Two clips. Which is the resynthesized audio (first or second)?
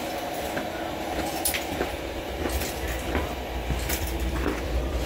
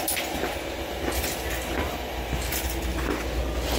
first